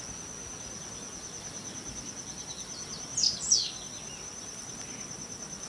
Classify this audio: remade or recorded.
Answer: recorded